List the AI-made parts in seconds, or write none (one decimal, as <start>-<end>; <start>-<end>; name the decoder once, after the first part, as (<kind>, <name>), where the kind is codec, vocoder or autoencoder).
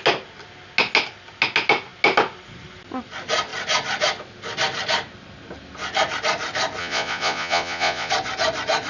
6.8-8.1 (vocoder, Vocos)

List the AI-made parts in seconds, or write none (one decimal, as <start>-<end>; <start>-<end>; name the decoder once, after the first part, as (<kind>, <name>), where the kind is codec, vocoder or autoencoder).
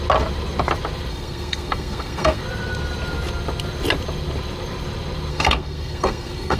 1.1-2.4 (codec, SNAC); 5.3-6.6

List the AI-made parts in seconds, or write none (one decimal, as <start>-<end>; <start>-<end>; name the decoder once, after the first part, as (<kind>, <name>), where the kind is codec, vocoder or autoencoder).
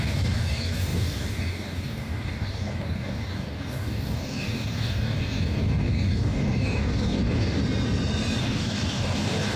0.0-7.6 (codec, DAC); 8.4-9.6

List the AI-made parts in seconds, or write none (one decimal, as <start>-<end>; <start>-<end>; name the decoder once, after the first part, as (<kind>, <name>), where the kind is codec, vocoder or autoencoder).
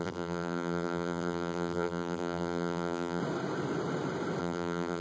0.0-3.2 (vocoder, BigVGAN v2); 4.4-5.0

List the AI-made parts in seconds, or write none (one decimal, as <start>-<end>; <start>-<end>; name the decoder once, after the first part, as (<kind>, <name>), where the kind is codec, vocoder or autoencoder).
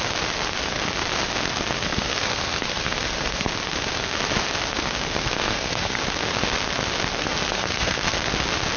1.8-3.5 (codec, SNAC); 5.2-6.0; 7.2-8.2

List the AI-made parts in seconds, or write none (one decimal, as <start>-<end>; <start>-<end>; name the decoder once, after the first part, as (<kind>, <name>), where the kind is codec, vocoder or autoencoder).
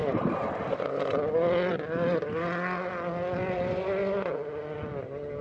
none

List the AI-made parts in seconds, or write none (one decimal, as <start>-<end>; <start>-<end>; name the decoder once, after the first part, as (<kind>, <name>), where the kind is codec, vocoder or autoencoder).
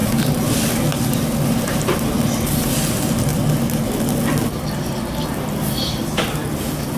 none